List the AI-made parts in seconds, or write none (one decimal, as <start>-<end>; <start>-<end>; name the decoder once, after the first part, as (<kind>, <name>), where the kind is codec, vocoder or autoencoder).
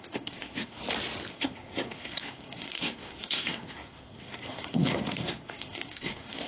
0.0-0.8 (codec, SNAC); 1.3-6.5